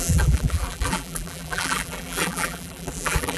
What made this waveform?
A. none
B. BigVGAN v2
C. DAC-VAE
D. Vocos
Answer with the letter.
B